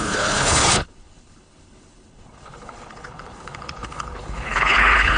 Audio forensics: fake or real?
fake